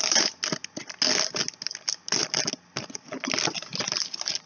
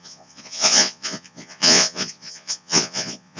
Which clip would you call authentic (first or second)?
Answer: first